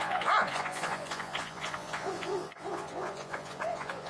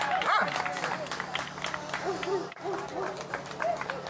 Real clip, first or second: second